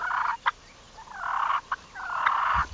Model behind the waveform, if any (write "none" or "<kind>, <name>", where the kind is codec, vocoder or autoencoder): none